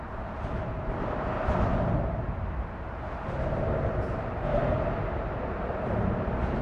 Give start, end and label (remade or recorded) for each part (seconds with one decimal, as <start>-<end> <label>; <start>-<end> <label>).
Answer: 0.0-6.6 remade